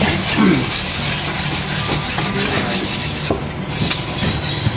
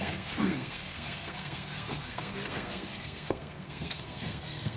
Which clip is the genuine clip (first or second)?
first